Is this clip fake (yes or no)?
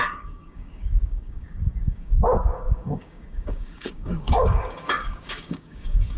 yes